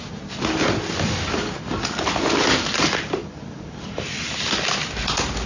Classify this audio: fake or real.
real